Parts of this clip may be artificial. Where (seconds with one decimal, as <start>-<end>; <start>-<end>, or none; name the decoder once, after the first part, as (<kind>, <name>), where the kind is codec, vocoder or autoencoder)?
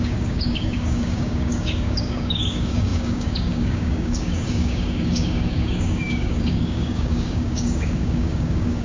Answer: 0.0-8.8 (codec, DAC)